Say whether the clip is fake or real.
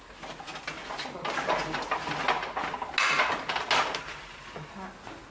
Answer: real